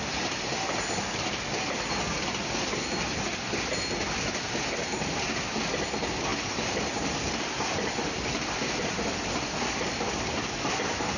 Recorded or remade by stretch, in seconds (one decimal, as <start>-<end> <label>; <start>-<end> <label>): 0.0-6.3 recorded; 6.3-10.7 remade; 10.7-11.2 recorded